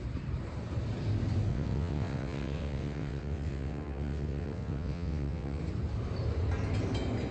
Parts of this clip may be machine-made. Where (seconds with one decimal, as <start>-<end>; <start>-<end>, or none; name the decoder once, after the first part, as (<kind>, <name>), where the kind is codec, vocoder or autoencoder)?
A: 1.5-5.6 (vocoder, WaveNeXt)